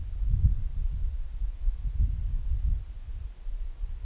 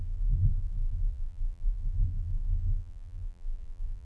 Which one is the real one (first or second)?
first